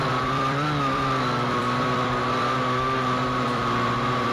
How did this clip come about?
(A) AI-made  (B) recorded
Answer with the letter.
A